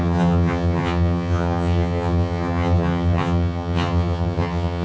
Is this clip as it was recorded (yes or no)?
no